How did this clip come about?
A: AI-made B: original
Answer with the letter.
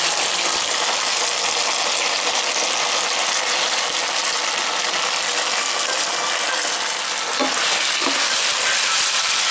B